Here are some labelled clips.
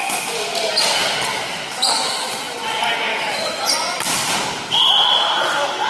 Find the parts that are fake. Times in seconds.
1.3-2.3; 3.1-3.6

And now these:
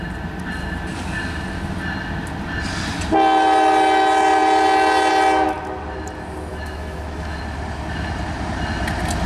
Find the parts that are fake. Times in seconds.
6.5-7.4